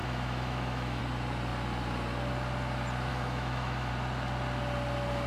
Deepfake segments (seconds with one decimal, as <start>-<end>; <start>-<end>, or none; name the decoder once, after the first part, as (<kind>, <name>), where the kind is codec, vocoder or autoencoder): 0.0-1.0 (autoencoder, DAC-VAE); 3.1-3.9